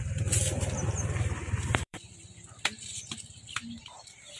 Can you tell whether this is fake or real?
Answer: fake